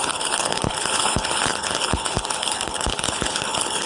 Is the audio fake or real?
fake